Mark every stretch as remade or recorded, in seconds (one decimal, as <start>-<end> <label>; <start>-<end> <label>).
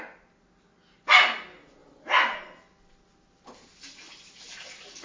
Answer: 0.0-5.0 recorded